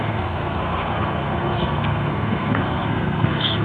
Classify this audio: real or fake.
fake